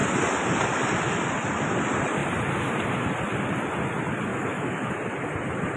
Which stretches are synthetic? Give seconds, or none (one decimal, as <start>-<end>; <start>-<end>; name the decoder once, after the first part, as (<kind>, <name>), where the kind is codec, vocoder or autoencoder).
4.3-4.9 (autoencoder, DAC-VAE)